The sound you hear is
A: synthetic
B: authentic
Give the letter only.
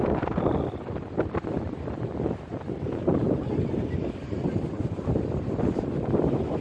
B